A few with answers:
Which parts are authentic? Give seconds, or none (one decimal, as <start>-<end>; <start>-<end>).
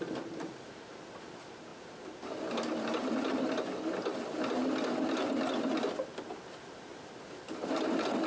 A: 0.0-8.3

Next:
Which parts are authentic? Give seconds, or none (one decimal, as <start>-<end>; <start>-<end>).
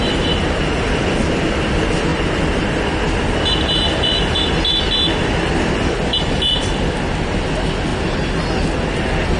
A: 0.0-2.1; 2.8-9.4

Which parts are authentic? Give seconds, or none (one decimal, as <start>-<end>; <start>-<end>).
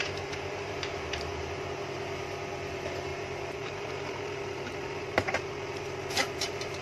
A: none